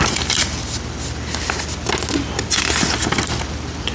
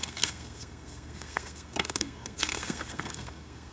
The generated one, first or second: second